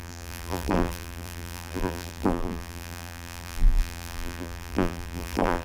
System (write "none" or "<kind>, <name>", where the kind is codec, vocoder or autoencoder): vocoder, BigVGAN v2